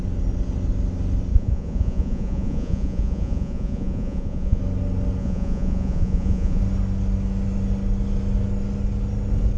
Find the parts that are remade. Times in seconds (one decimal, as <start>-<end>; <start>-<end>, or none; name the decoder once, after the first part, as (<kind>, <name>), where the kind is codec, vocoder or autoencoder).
1.3-4.6 (vocoder, Vocos); 5.2-6.6